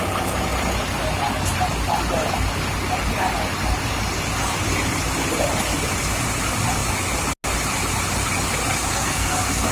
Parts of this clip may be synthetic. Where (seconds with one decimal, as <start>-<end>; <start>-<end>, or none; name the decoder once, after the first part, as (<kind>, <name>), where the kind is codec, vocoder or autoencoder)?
8.9-9.7 (codec, SNAC)

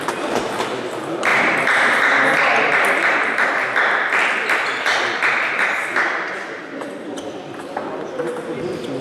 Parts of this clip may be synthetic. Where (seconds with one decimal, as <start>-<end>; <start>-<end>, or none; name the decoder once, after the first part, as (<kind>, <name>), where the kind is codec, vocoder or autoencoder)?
none

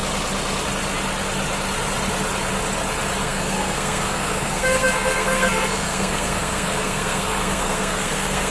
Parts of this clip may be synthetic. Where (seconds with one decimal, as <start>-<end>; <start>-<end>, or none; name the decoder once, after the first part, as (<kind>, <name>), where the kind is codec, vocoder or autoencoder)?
3.2-8.5 (codec, SNAC)

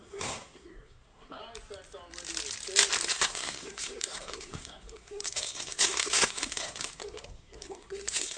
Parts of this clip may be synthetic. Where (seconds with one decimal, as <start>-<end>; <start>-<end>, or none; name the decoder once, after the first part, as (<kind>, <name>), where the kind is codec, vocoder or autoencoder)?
0.0-1.4 (codec, SNAC); 3.1-8.4

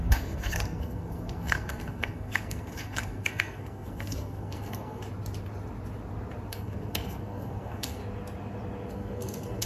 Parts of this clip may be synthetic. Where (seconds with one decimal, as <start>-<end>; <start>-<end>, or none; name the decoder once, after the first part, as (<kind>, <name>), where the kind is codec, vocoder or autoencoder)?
0.0-5.0 (codec, SNAC); 6.5-8.0; 8.9-9.7